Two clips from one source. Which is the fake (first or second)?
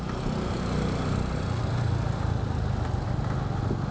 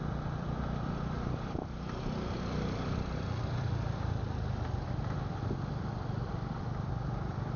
second